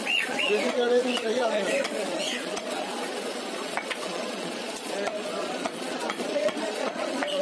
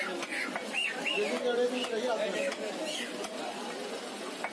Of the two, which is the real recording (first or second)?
second